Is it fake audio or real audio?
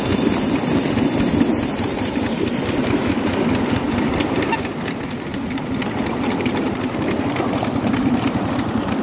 real